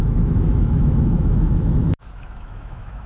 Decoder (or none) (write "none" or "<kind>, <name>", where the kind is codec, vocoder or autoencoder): autoencoder, DAC-VAE